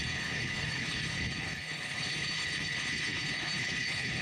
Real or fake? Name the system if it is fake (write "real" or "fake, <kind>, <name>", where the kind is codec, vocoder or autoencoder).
fake, codec, HILCodec